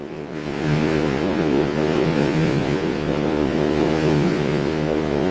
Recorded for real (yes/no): no